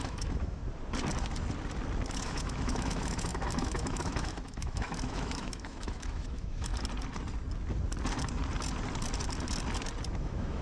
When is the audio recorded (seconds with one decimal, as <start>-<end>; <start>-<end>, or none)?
0.6-2.1; 6.7-10.2